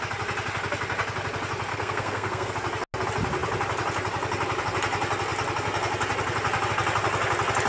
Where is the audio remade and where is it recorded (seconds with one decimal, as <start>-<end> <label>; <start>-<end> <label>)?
0.0-1.7 recorded; 1.7-2.5 remade; 2.5-7.7 recorded